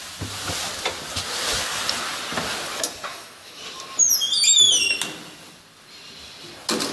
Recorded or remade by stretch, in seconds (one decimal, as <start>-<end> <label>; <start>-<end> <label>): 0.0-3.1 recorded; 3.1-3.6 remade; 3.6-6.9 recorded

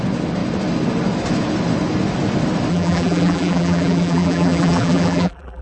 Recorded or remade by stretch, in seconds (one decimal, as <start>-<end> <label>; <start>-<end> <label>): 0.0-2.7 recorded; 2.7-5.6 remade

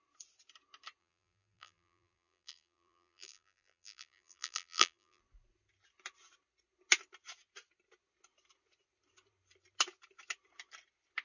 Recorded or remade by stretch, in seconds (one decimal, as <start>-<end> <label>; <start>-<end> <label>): 0.0-1.0 recorded; 1.0-5.2 remade; 5.2-11.2 recorded

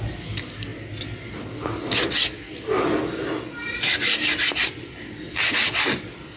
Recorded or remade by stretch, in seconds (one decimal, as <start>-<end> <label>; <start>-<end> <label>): 0.0-6.4 recorded

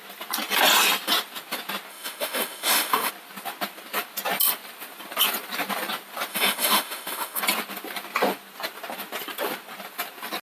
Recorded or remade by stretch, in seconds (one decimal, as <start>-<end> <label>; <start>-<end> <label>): 0.0-1.9 recorded; 1.9-3.1 remade; 3.1-6.3 recorded; 6.3-7.4 remade; 7.4-10.5 recorded

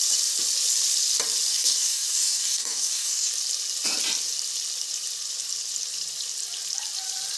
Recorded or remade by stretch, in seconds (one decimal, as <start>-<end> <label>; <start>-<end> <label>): 0.0-1.5 recorded; 1.5-3.3 remade; 3.3-7.4 recorded

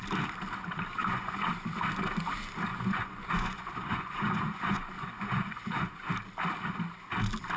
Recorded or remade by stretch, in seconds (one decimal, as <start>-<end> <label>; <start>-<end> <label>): 0.0-1.0 recorded; 1.0-1.5 remade; 1.5-2.7 recorded; 2.7-6.1 remade; 6.1-7.6 recorded